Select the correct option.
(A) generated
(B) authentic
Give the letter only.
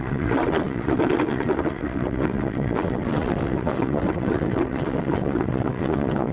A